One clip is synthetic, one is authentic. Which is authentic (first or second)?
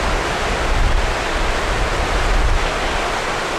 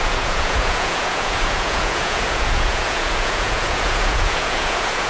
first